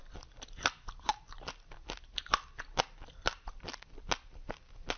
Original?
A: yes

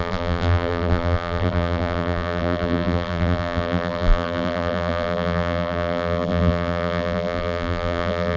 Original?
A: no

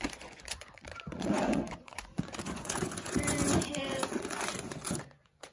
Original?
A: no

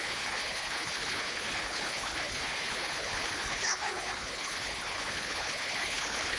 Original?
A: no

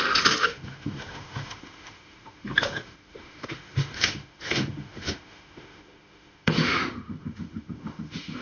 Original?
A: no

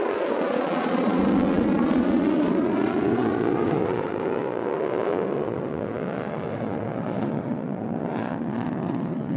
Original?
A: no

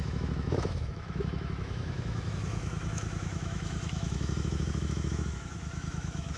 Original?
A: no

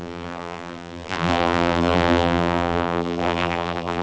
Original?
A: no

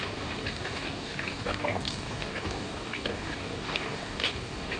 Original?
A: no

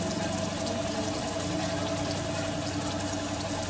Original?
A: yes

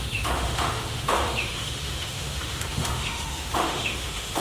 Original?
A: no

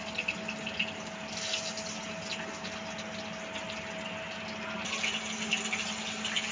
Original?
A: yes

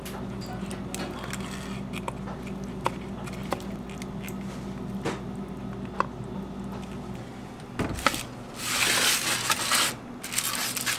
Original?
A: yes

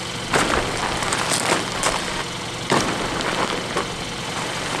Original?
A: yes